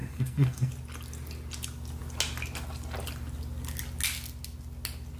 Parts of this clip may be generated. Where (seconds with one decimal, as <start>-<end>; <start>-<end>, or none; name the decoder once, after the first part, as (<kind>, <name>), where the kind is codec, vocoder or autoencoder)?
0.0-0.7 (codec, SNAC)